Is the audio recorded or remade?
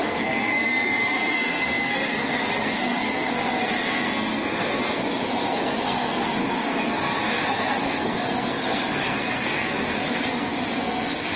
remade